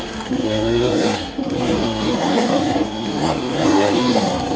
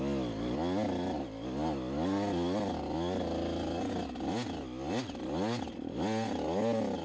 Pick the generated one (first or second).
first